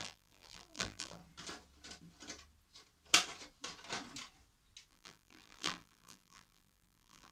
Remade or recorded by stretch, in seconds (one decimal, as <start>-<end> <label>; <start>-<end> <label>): 0.0-1.2 remade; 1.2-4.9 recorded; 4.9-7.3 remade